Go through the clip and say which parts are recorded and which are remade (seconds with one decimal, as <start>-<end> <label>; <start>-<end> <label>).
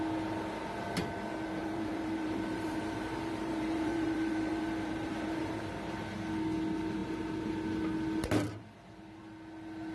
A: 0.0-1.6 recorded; 1.6-5.6 remade; 5.6-9.9 recorded